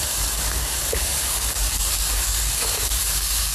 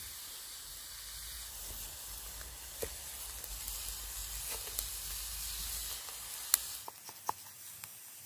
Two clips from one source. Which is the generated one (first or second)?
first